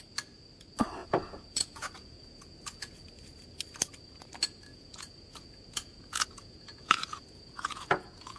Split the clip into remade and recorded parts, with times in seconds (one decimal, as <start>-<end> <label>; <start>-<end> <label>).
0.0-1.0 recorded; 1.0-3.0 remade; 3.0-4.7 recorded; 4.7-8.4 remade